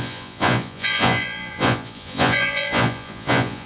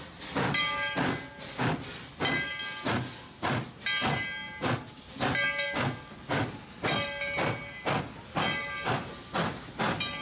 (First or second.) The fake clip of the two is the first